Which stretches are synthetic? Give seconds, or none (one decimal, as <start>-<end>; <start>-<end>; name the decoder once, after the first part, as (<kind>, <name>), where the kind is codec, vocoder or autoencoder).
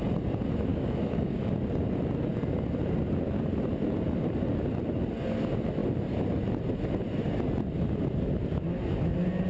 0.7-1.5 (codec, DAC)